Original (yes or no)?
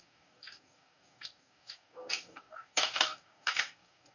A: no